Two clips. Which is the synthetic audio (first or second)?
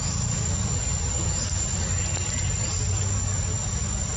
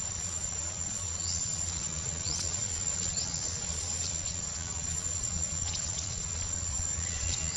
second